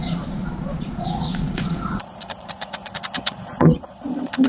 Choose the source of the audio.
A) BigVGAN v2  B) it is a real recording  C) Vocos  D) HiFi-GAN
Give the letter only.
C